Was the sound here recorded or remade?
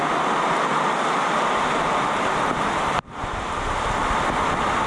recorded